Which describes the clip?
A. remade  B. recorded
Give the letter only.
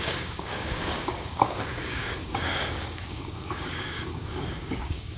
A